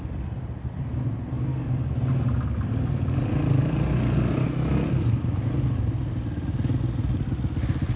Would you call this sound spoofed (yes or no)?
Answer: no